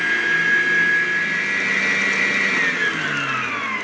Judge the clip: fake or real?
real